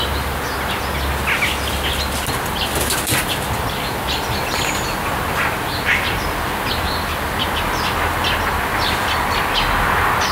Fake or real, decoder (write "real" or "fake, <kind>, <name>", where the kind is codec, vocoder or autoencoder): real